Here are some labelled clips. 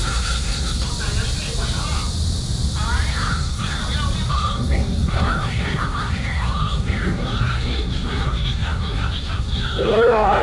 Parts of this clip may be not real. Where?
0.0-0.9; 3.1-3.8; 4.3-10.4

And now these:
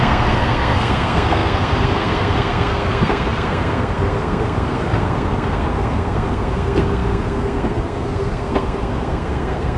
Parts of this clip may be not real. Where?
0.0-9.8

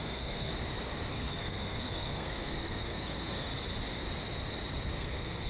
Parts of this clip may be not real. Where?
0.0-0.5; 1.1-3.5; 4.9-5.5